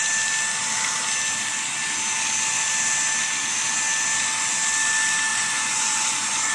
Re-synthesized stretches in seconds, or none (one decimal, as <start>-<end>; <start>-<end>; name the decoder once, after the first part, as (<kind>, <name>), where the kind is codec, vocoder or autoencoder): 5.3-6.5 (vocoder, Vocos)